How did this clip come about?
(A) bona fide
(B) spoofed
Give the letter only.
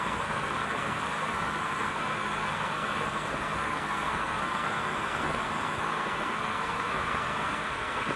B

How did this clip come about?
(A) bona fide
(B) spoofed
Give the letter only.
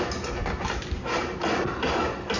A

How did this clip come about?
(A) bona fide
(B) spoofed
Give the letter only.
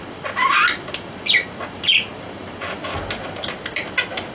A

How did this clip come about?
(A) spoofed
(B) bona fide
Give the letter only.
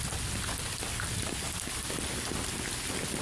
B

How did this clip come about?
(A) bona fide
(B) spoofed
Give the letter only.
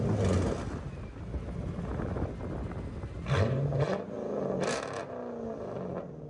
A